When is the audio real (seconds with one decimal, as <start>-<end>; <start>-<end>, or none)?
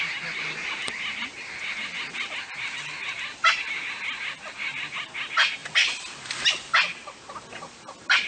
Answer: 0.0-8.3